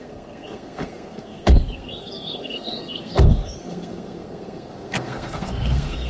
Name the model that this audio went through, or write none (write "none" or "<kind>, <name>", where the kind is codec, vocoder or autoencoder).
codec, SNAC